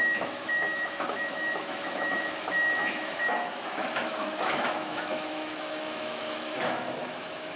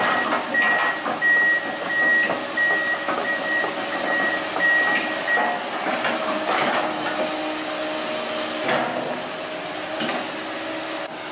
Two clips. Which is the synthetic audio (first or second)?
first